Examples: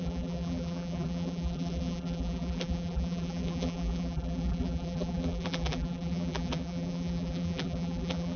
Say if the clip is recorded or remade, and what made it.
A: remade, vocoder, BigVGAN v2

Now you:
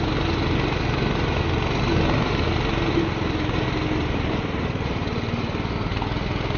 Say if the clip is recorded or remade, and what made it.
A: recorded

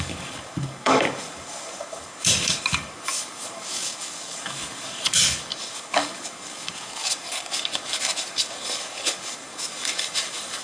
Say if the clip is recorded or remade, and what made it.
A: remade, codec, DAC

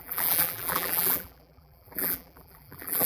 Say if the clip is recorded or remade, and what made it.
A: remade, vocoder, BigVGAN v2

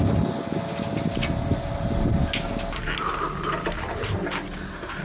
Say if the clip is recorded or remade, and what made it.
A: recorded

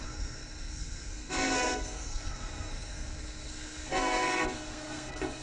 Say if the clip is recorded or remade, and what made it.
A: remade, codec, SNAC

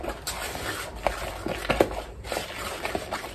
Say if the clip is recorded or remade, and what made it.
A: recorded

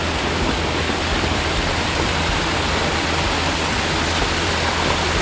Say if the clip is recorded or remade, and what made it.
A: recorded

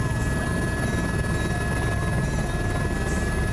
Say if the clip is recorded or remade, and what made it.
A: recorded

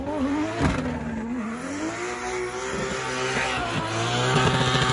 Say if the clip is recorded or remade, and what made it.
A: recorded